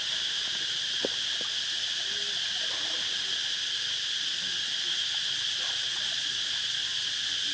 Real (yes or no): yes